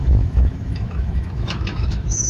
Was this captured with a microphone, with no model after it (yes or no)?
no